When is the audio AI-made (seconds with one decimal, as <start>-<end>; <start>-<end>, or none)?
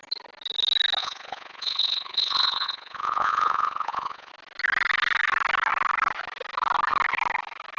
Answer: 1.0-4.3